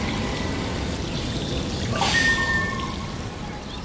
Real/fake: real